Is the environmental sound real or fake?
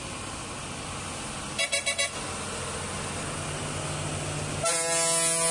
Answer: real